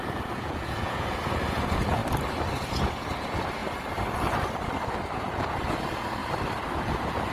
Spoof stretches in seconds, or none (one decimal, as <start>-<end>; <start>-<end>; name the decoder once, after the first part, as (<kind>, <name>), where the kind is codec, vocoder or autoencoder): 0.0-2.0 (vocoder, Vocos); 2.7-3.6; 5.2-6.2; 6.8-7.3